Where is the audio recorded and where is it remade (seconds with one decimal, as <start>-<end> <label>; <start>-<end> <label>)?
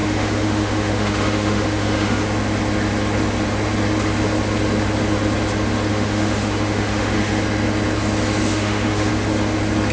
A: 0.0-2.2 remade; 2.2-5.9 recorded; 5.9-7.4 remade; 7.4-8.5 recorded; 8.5-9.1 remade; 9.1-9.9 recorded